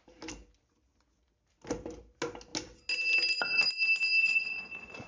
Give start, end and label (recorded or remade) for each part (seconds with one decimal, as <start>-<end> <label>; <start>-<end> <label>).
0.0-4.2 recorded; 4.2-5.1 remade

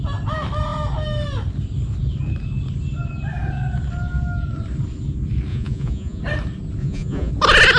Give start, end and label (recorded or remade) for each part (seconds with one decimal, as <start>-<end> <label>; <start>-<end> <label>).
0.0-5.5 recorded; 5.5-6.2 remade; 6.2-6.8 recorded; 6.8-7.3 remade; 7.3-7.8 recorded